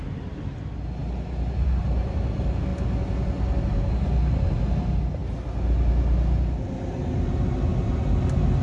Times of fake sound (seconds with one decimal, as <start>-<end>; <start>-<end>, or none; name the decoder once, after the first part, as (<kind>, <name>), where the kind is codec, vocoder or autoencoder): 1.0-1.8 (vocoder, BigVGAN v2)